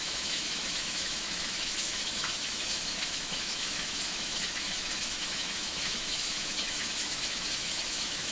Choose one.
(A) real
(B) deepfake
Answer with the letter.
B